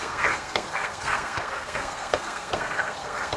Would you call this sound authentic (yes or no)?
no